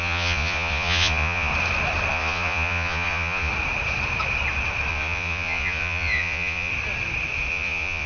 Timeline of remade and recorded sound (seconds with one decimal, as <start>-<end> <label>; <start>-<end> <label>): 0.0-1.5 remade; 1.5-2.1 recorded; 2.1-3.5 remade; 3.5-4.9 recorded; 4.9-6.7 remade; 6.7-7.5 recorded; 7.5-8.1 remade